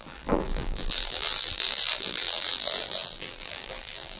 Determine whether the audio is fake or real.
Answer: fake